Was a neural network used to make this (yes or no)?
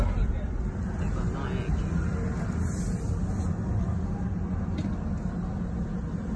no